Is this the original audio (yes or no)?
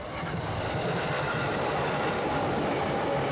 yes